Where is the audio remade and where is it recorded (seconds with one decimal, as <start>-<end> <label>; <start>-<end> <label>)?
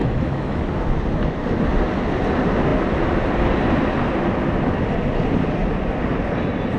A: 0.0-0.6 remade; 0.6-6.8 recorded